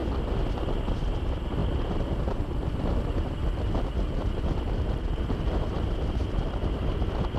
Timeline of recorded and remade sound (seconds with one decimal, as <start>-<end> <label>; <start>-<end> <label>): 0.0-6.2 recorded; 6.2-7.4 remade